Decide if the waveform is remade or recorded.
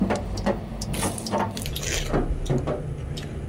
recorded